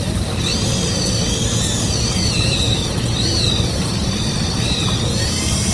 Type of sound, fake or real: real